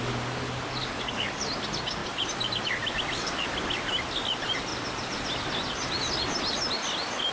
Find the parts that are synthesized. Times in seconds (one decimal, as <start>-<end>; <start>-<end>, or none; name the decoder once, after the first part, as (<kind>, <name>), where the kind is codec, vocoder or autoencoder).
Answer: 0.8-1.4 (codec, DAC)